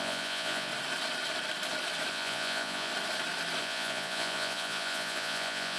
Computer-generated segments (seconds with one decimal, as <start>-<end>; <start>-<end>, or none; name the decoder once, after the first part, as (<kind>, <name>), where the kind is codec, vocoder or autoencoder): 0.0-0.7 (vocoder, Vocos); 2.1-2.9; 3.6-5.8